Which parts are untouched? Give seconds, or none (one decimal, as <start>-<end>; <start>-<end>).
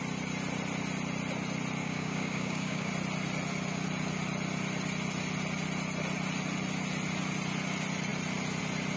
0.0-1.8; 2.9-9.0